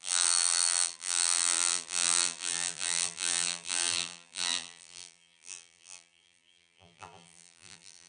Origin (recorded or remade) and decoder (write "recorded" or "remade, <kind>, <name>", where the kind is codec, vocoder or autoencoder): remade, vocoder, BigVGAN v2